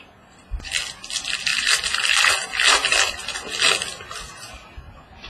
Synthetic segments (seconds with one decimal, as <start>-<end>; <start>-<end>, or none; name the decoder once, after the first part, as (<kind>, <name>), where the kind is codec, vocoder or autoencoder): none